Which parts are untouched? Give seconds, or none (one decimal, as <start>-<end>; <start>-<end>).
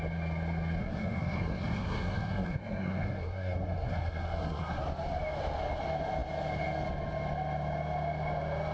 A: 0.0-0.8; 4.8-8.7